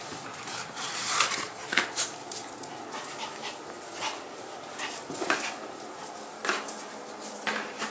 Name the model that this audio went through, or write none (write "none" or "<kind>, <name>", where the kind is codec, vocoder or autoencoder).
none